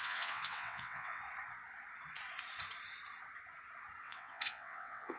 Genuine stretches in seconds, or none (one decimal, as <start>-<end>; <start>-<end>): 1.2-4.0

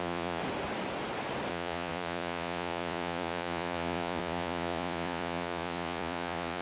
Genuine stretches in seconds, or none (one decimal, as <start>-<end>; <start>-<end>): 0.4-1.5